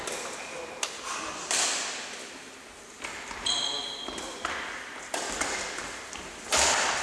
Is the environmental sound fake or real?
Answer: real